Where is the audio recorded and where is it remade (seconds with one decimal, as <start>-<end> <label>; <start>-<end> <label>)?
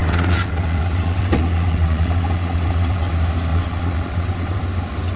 0.0-3.1 remade; 3.1-3.5 recorded; 3.5-4.6 remade; 4.6-5.2 recorded